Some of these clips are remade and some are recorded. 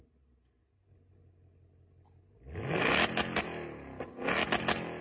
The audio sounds recorded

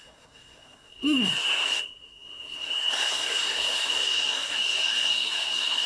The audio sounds remade